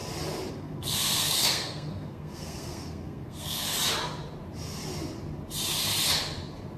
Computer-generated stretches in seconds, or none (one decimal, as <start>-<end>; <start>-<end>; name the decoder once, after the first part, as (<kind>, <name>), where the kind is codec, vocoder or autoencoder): 0.5-3.7 (codec, SNAC)